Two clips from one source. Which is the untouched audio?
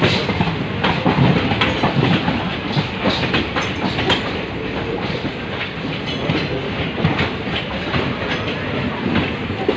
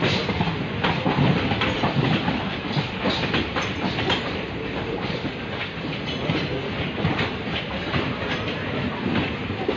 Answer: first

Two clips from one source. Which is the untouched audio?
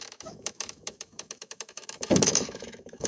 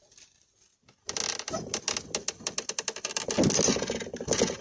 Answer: second